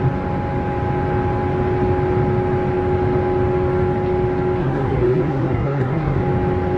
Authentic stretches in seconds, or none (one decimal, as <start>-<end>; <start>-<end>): 0.0-4.6; 6.2-6.8